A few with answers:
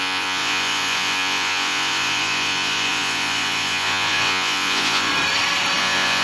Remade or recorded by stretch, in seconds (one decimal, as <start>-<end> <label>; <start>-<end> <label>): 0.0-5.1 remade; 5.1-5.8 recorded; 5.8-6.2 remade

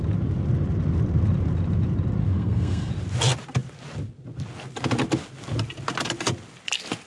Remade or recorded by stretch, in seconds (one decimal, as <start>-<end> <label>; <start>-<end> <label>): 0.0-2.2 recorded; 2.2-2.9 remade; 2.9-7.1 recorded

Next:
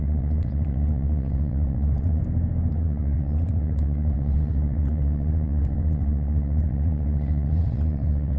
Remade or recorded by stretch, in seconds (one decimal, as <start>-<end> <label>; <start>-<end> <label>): 0.0-2.2 remade; 2.2-2.7 recorded; 2.7-8.4 remade